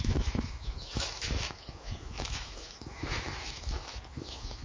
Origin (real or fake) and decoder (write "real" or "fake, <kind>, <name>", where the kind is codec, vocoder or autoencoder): fake, autoencoder, DAC-VAE